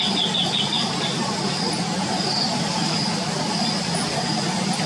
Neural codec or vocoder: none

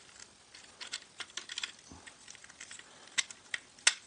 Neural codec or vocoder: none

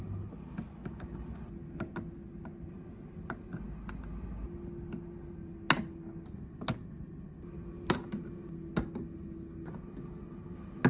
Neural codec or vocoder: none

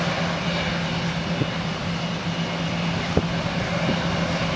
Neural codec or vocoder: none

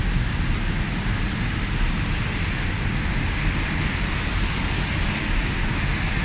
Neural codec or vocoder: none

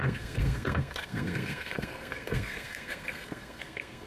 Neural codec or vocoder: codec, SNAC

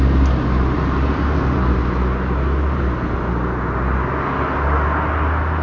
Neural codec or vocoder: none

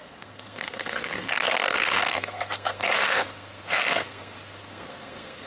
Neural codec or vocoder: codec, SNAC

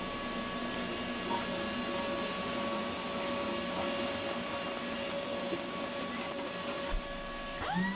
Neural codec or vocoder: none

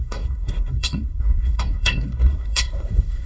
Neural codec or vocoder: codec, SNAC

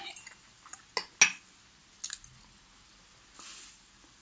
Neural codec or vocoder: none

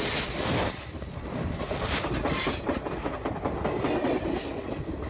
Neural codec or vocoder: none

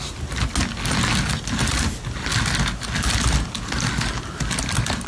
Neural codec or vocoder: none